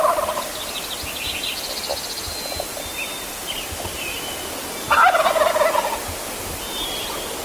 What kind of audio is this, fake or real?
real